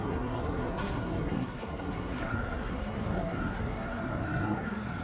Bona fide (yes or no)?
no